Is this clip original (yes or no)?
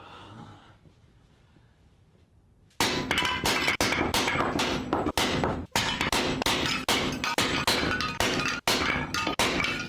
yes